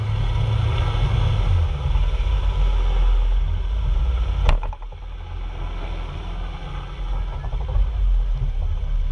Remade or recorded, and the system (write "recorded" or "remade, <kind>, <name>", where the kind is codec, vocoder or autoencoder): recorded